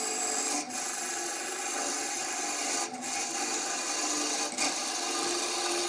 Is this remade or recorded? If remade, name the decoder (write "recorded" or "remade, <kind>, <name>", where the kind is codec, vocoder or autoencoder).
recorded